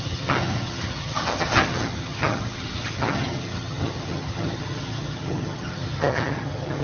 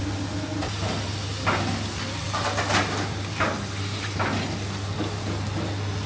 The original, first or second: second